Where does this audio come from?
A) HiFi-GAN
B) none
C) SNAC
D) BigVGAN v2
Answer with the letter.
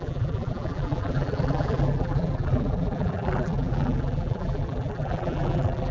D